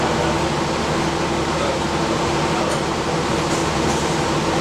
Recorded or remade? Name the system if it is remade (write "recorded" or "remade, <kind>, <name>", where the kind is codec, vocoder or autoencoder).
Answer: recorded